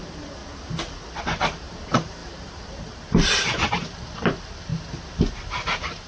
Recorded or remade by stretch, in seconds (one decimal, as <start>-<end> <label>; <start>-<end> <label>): 0.0-0.4 remade; 0.4-1.2 recorded; 1.2-4.7 remade; 4.7-5.3 recorded; 5.3-6.1 remade